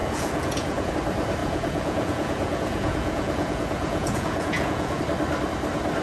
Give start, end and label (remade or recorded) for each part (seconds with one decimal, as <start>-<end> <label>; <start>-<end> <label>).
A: 0.0-0.9 remade; 0.9-1.4 recorded; 1.4-5.0 remade; 5.0-6.0 recorded